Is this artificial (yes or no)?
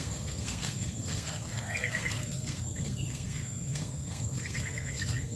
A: yes